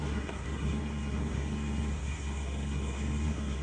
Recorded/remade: remade